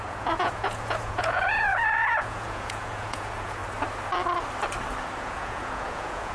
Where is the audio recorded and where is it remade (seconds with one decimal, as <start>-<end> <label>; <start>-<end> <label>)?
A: 0.0-3.6 remade; 3.6-5.2 recorded; 5.2-6.3 remade